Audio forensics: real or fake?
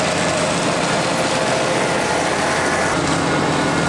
real